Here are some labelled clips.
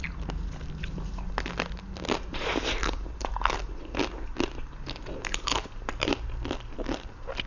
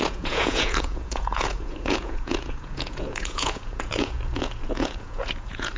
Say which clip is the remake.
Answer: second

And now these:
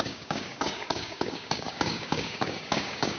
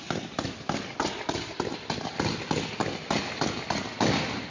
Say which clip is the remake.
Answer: first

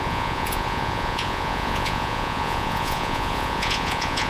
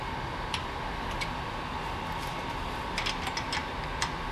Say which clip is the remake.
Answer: first